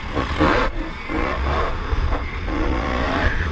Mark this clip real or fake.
fake